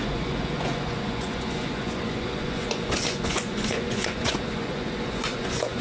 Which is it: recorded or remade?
remade